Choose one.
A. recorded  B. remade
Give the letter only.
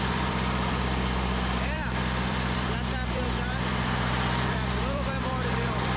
B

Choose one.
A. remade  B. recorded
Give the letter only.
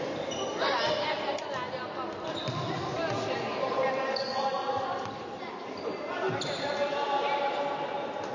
B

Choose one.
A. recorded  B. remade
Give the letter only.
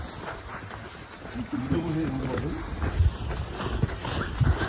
A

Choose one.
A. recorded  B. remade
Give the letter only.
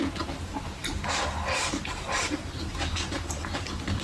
B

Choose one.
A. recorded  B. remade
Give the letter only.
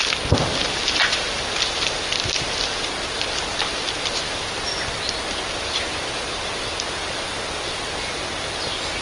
A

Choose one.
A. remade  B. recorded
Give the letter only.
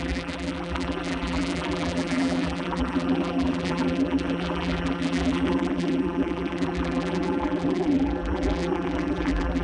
A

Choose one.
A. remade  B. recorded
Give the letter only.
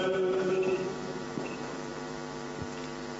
A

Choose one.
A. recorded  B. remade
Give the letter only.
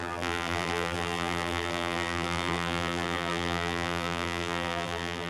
B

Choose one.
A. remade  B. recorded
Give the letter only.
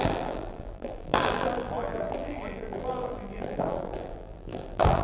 A